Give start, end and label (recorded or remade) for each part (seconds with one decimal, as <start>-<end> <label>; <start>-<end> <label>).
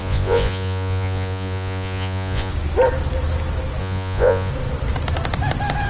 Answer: 0.0-2.5 remade; 2.5-3.8 recorded; 3.8-4.5 remade; 4.5-5.9 recorded